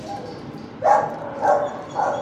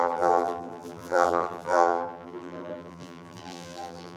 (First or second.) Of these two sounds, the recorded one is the first